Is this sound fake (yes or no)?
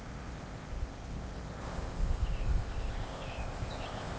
yes